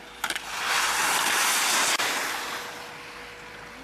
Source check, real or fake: real